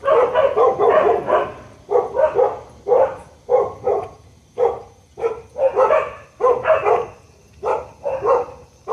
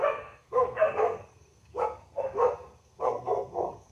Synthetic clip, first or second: second